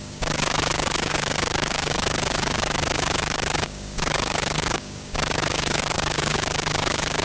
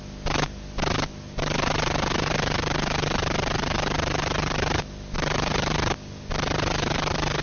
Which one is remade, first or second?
first